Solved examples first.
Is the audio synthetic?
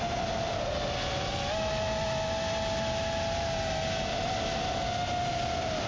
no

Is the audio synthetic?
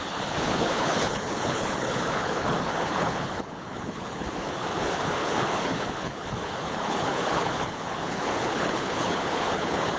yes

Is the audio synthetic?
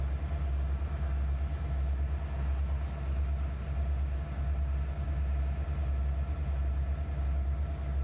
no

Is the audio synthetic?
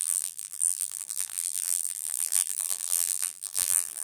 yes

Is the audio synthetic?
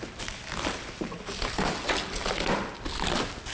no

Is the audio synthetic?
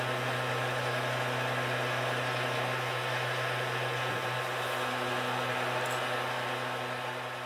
no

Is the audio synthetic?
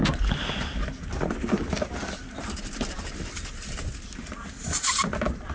no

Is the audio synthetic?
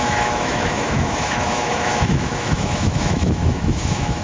yes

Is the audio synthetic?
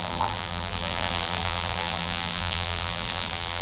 yes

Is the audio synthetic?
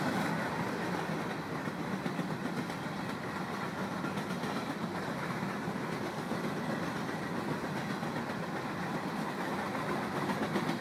no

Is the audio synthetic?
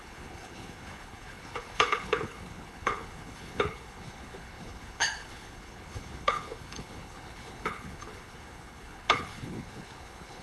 yes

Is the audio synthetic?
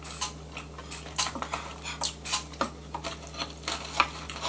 no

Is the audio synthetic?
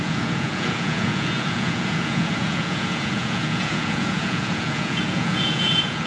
yes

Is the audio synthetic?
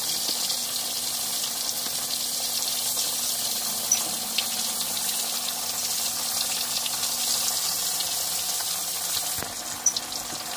no